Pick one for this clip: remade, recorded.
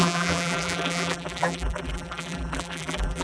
remade